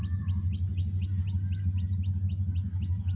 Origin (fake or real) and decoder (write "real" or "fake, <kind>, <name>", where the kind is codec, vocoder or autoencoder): real